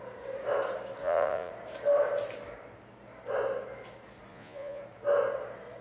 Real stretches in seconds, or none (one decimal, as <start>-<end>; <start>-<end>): 0.0-1.0; 1.5-4.3; 4.8-5.8

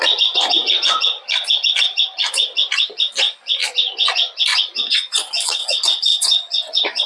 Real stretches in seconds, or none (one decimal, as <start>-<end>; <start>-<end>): 0.0-4.5; 5.3-6.1

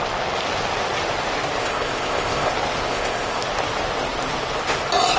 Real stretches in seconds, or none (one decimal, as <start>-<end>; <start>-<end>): 0.0-1.6; 2.5-2.9; 3.4-5.2